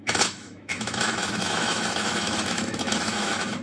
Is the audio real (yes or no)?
no